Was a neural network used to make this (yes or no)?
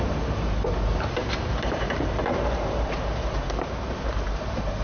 yes